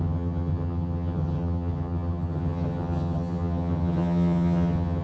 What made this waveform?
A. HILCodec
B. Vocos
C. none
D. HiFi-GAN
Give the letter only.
D